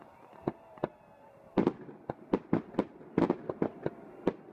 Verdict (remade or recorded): recorded